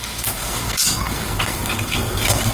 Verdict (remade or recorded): remade